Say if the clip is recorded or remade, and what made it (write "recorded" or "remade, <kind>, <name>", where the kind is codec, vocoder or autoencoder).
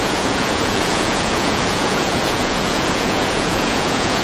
remade, vocoder, Vocos